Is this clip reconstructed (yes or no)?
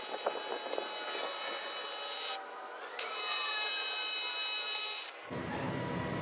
no